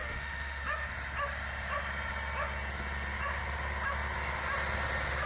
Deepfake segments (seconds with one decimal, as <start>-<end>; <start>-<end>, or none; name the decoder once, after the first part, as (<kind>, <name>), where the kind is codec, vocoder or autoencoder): 0.0-0.6 (autoencoder, DAC-VAE)